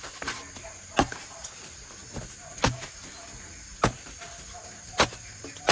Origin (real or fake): real